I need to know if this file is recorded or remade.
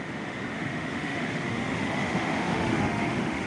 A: remade